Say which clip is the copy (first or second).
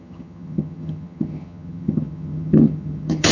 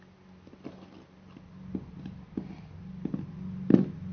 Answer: first